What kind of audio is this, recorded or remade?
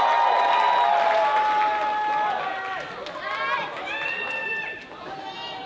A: recorded